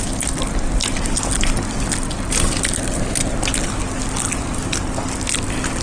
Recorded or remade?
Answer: recorded